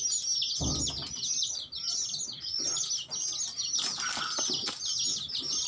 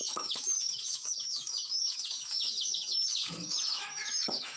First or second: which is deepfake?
second